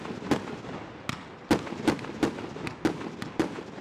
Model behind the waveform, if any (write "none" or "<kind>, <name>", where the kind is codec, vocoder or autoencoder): none